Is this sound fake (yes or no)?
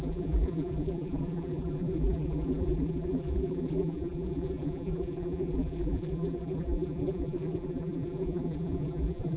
yes